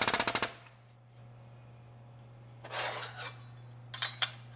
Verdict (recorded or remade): recorded